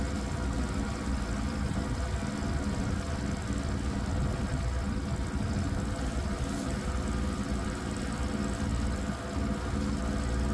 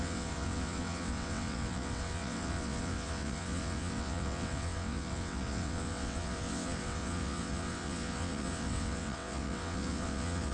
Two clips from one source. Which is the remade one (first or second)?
second